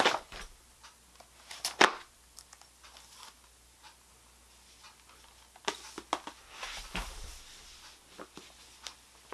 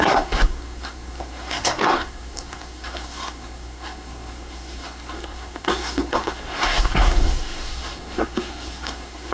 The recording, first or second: first